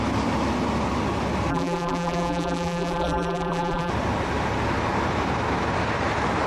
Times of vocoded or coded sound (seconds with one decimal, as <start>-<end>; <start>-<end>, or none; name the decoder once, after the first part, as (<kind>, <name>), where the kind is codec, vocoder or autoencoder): 1.5-3.9 (vocoder, BigVGAN v2)